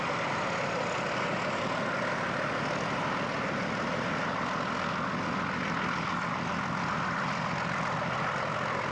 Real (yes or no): yes